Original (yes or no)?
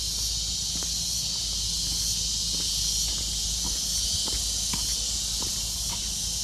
yes